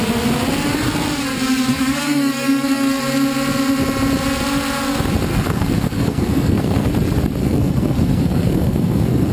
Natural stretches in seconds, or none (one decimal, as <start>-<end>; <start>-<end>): 0.0-1.7; 3.0-5.3; 6.9-7.4